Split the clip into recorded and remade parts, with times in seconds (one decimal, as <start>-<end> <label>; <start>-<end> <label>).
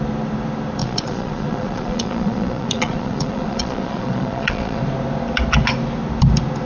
0.0-0.8 recorded; 0.8-4.8 remade; 4.8-6.7 recorded